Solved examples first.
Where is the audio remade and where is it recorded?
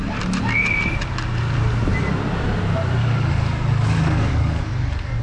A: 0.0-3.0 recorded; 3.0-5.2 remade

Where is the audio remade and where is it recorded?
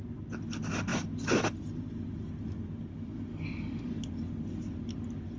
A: 0.0-3.3 recorded; 3.3-4.0 remade; 4.0-5.4 recorded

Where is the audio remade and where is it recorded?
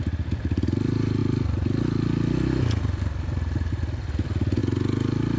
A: 0.0-5.4 recorded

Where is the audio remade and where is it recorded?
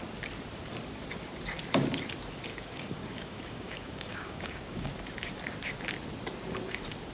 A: 0.0-2.5 recorded; 2.5-4.9 remade; 4.9-7.1 recorded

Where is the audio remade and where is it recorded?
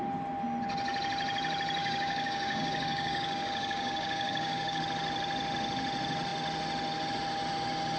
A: 0.0-1.8 recorded; 1.8-4.8 remade; 4.8-8.0 recorded